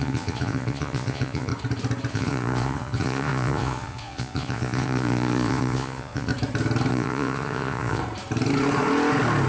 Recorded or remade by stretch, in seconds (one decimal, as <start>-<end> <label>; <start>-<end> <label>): 0.0-1.5 remade; 1.5-2.1 recorded; 2.1-6.3 remade; 6.3-6.9 recorded; 6.9-8.0 remade; 8.0-9.5 recorded